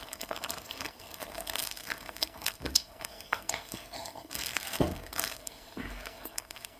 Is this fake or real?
fake